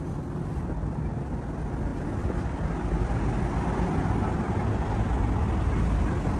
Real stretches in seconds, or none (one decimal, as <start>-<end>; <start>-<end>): 0.0-6.4